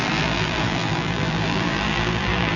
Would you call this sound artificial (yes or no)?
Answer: yes